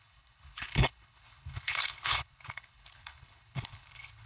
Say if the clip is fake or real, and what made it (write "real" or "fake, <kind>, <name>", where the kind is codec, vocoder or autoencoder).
fake, codec, HILCodec